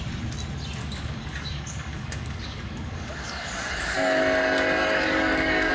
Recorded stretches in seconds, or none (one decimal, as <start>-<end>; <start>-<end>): 0.0-0.8; 4.2-4.8